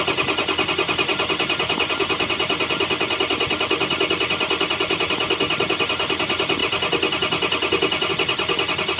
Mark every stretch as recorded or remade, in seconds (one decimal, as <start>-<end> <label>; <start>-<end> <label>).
0.0-9.0 recorded